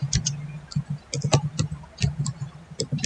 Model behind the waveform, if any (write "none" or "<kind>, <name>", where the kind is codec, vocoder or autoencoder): vocoder, BigVGAN v2